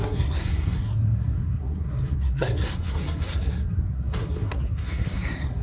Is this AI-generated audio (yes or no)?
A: yes